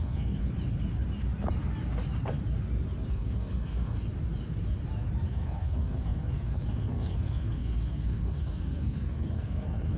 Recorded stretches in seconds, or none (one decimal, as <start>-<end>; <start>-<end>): 0.4-3.1; 4.1-5.3